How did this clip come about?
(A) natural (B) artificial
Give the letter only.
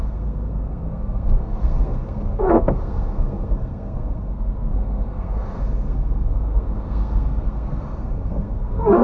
B